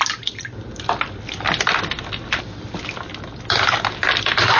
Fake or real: real